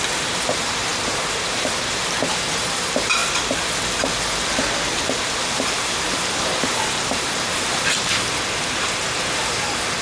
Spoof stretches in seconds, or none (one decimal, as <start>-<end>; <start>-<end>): 0.0-3.2; 5.5-10.0